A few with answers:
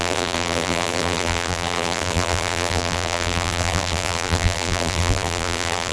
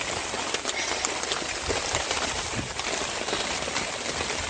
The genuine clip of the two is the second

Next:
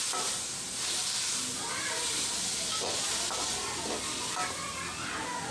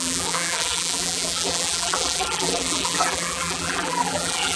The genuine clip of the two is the first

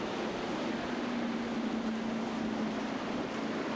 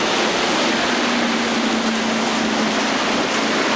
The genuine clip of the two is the second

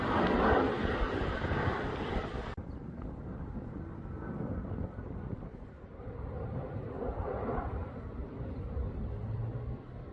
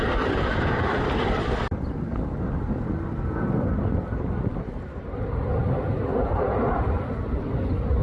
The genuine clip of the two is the second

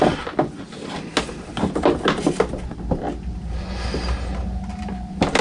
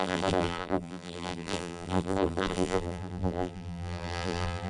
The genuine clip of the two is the first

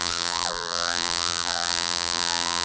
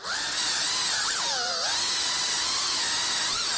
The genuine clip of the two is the second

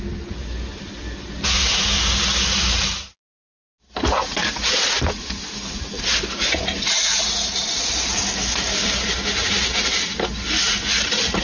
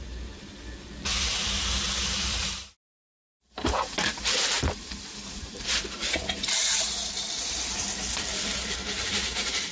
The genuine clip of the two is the first